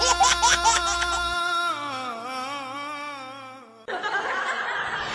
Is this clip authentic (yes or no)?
yes